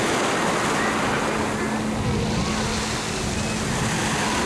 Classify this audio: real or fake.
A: real